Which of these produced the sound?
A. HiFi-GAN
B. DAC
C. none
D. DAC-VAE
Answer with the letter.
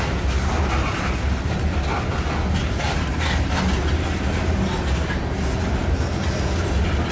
C